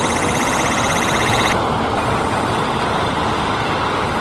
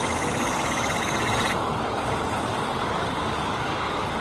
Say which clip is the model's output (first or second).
second